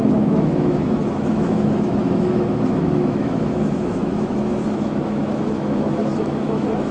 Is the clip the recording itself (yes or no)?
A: no